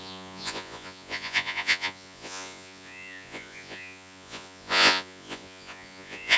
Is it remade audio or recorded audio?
remade